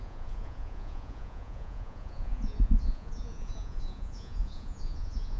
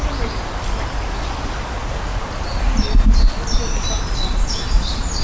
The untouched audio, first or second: second